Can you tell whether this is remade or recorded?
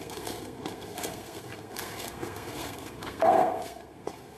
remade